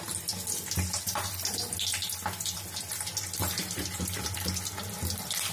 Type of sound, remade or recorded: recorded